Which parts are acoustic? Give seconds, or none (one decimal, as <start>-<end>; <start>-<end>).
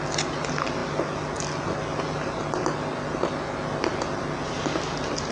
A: 0.0-5.3